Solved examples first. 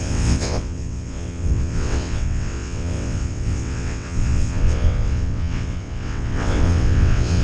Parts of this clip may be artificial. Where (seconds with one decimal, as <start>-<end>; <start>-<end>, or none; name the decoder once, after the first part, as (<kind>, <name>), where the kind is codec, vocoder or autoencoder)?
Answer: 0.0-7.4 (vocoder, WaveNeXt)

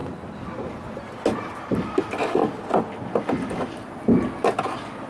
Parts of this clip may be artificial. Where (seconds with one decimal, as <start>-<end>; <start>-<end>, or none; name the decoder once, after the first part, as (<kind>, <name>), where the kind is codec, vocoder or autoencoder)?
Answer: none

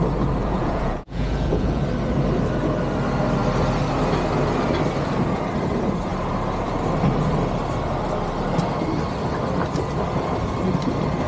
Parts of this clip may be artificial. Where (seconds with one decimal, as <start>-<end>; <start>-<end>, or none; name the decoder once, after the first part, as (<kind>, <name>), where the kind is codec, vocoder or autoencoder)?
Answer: 0.4-1.8 (vocoder, Vocos)